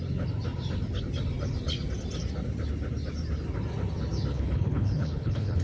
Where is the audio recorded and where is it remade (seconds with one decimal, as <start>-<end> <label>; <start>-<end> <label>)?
0.0-4.3 recorded; 4.3-5.6 remade